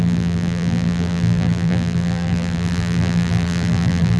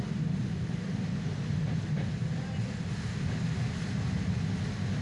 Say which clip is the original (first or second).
second